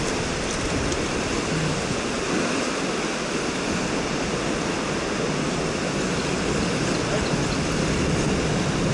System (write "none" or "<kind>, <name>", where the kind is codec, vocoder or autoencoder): none